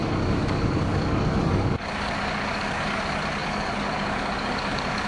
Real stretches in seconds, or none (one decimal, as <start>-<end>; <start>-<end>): 3.0-3.4